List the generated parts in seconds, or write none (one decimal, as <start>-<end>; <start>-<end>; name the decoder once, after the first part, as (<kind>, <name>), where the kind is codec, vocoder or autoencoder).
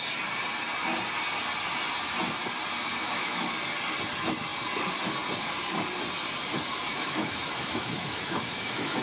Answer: 3.0-3.5 (autoencoder, DAC-VAE); 6.9-9.0